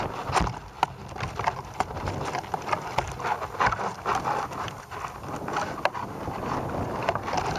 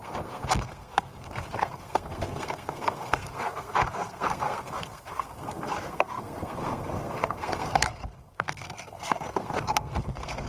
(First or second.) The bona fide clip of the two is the first